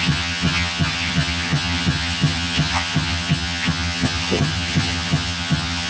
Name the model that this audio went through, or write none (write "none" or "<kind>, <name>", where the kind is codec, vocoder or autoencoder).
vocoder, HiFi-GAN